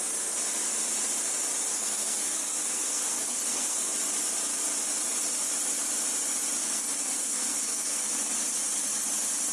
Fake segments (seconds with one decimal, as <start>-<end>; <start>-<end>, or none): 1.7-3.9; 6.6-8.1